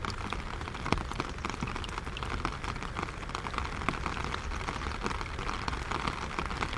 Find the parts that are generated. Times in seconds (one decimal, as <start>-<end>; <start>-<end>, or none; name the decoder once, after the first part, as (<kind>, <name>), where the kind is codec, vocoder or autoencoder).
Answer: none